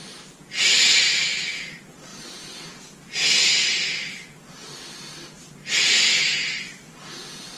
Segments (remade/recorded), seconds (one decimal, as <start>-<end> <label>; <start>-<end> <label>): 0.0-7.6 recorded